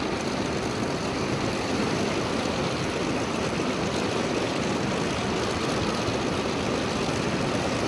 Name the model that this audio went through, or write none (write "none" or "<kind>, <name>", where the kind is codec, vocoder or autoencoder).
none